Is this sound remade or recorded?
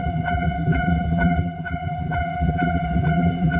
remade